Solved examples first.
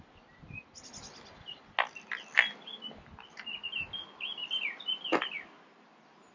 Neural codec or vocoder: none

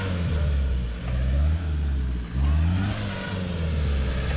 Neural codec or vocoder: none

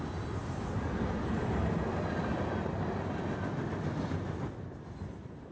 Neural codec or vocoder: none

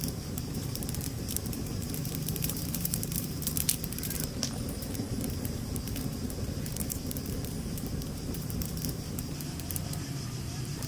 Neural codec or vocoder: vocoder, BigVGAN v2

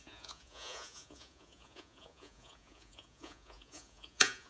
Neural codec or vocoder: vocoder, Vocos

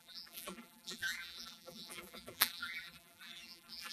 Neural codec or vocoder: vocoder, BigVGAN v2